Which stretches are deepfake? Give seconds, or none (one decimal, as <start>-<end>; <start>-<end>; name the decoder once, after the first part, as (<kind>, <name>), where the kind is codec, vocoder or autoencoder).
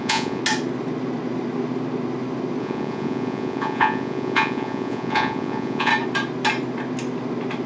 0.0-0.4 (vocoder, Vocos); 2.6-5.9